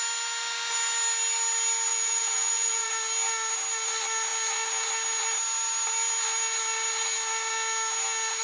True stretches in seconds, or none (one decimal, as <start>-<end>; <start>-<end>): 0.0-1.9; 2.9-8.4